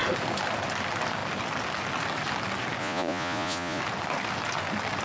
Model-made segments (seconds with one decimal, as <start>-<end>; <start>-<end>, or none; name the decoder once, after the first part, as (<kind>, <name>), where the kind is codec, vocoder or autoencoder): 2.8-3.8 (vocoder, Vocos)